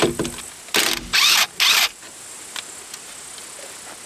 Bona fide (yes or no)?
yes